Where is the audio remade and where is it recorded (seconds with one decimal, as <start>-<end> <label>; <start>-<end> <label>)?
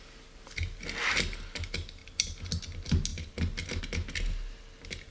0.0-5.1 recorded